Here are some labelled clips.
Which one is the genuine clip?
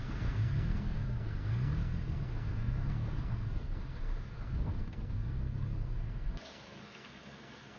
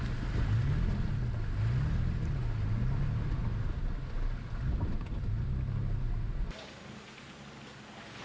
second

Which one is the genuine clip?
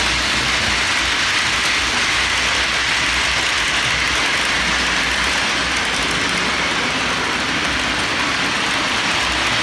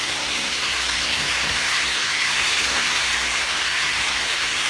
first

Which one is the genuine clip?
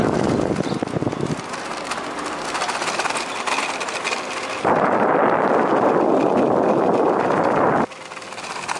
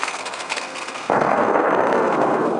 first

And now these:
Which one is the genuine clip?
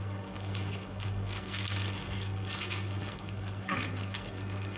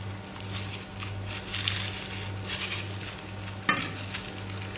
second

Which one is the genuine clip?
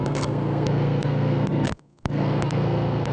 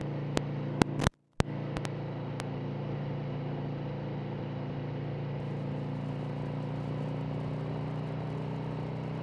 second